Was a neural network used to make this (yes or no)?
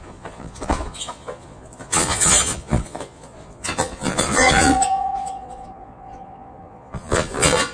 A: yes